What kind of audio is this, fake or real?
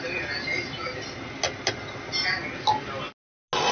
real